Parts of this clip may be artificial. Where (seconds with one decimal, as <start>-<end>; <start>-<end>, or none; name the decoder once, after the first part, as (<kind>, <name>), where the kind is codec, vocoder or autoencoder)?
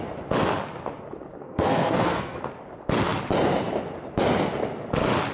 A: 1.4-2.4 (codec, SNAC)